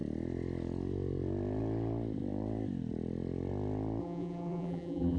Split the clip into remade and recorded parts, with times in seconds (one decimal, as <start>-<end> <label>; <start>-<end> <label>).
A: 0.0-4.0 recorded; 4.0-5.2 remade